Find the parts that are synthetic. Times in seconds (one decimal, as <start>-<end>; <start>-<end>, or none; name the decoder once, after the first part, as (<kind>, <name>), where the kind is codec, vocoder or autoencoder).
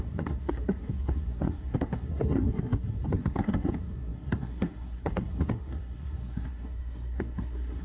0.0-7.8 (codec, SNAC)